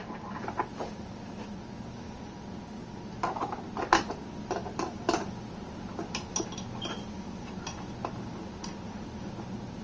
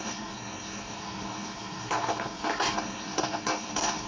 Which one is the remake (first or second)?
second